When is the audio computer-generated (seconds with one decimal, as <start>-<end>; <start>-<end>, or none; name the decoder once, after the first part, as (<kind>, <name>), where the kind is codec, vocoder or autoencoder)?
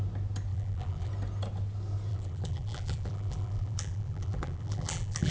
0.5-1.1 (vocoder, BigVGAN v2); 2.1-5.3